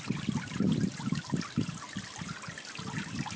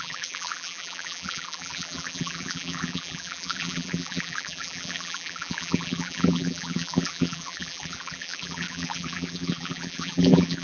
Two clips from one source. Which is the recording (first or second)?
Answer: first